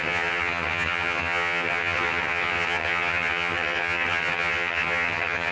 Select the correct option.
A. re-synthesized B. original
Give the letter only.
A